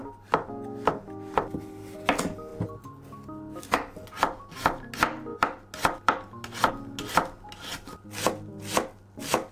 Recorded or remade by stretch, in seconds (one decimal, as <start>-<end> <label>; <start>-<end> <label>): 0.0-9.5 recorded